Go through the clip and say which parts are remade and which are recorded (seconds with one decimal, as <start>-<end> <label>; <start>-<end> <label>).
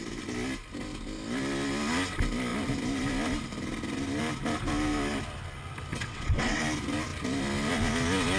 0.0-5.9 recorded; 5.9-6.6 remade; 6.6-8.4 recorded